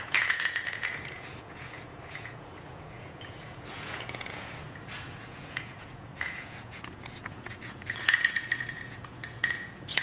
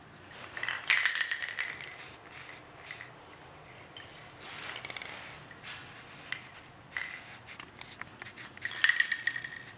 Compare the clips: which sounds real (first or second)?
second